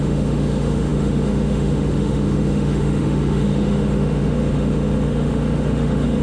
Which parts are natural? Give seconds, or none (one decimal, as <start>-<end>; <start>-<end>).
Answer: none